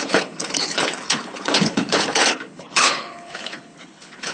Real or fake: fake